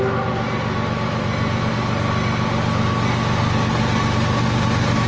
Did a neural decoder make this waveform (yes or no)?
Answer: no